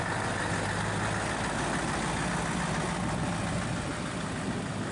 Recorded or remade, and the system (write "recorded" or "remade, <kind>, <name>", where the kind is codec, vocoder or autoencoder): recorded